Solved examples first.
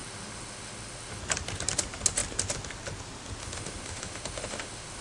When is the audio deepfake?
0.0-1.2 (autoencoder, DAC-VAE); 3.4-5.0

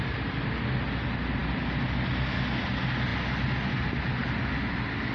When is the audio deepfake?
none

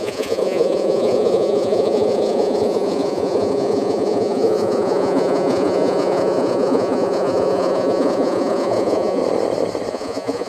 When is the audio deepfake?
0.0-9.2 (vocoder, Vocos); 9.9-10.5

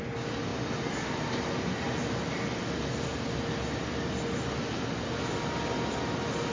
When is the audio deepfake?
none

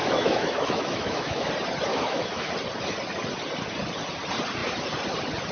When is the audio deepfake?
0.0-1.5 (autoencoder, DAC-VAE); 1.9-2.5

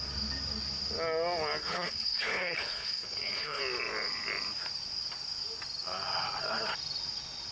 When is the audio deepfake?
1.6-3.6 (codec, HILCodec)